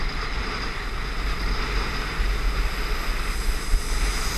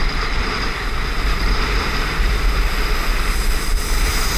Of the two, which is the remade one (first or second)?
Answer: second